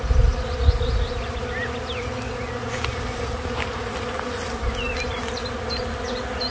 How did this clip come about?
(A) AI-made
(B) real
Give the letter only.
B